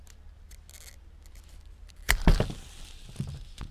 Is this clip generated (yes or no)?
no